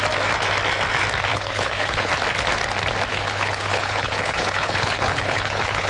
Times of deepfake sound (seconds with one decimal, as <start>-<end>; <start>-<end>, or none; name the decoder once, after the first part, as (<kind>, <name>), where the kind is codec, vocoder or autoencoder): 1.3-2.1 (codec, HILCodec); 3.1-5.9